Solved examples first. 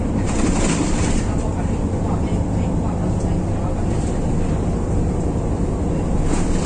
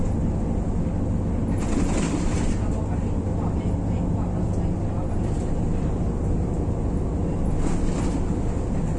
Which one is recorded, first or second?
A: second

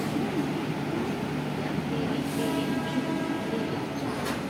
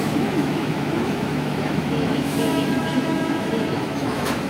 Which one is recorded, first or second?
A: first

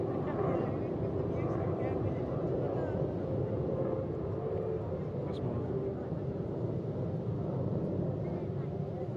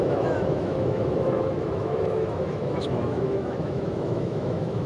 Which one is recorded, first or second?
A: first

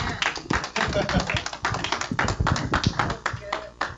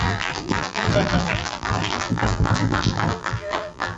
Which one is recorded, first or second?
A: first